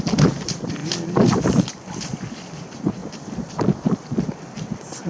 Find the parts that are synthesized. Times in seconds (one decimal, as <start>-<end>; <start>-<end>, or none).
3.0-3.7